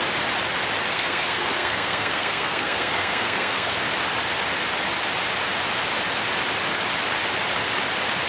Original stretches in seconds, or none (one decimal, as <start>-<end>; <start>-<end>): 0.0-0.9; 3.7-8.3